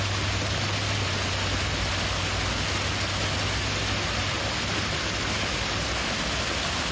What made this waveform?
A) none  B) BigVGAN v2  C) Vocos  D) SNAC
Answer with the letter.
A